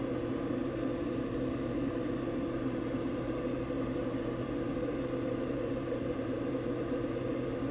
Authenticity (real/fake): fake